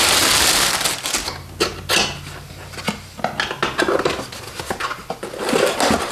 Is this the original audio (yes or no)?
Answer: yes